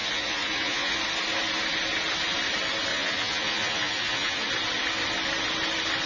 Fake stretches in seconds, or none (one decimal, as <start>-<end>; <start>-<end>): 0.0-1.0; 2.9-4.5